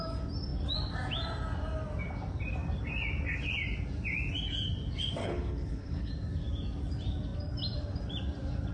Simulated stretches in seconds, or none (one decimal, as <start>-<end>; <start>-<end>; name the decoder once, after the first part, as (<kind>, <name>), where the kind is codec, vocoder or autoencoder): 5.2-6.1 (codec, HILCodec)